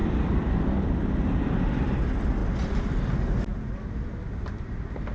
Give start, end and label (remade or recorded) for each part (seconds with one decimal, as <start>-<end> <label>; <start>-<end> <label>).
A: 0.0-5.1 recorded

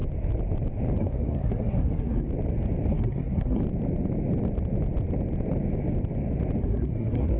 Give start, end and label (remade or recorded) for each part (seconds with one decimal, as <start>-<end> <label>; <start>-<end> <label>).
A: 0.0-1.0 recorded; 1.0-2.3 remade; 2.3-2.9 recorded; 2.9-3.6 remade; 3.6-6.6 recorded; 6.6-7.4 remade

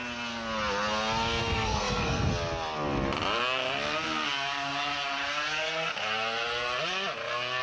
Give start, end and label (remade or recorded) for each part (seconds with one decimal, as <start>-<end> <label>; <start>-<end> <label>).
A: 0.0-1.4 recorded; 1.4-2.3 remade; 2.3-7.6 recorded